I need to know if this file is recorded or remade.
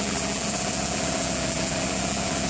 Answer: remade